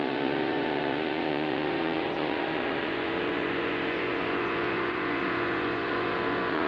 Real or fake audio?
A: fake